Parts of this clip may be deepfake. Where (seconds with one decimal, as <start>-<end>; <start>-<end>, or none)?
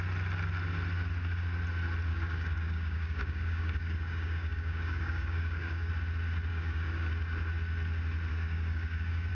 2.1-5.9; 6.5-7.1; 8.3-9.3